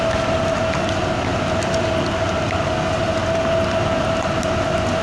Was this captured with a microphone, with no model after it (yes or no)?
yes